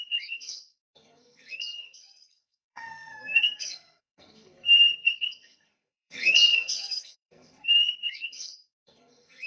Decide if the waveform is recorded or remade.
remade